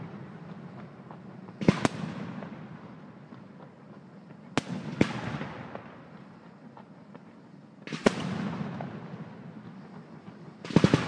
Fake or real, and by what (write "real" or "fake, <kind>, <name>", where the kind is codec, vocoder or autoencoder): real